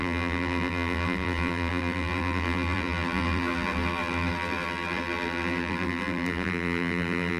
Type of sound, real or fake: fake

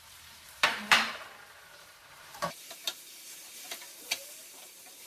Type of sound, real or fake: fake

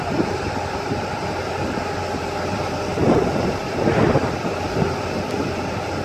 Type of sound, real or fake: real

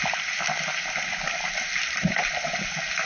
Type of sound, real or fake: real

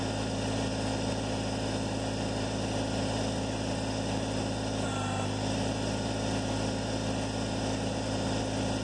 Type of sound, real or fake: real